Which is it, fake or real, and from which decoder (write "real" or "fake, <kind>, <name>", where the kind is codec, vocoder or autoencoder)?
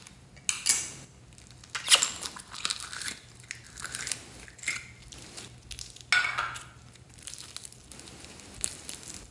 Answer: real